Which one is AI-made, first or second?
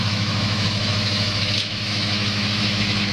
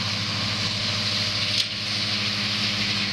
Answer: first